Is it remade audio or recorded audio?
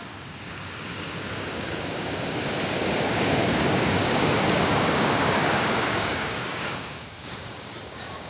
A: remade